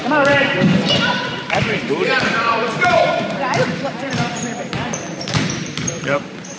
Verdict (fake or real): fake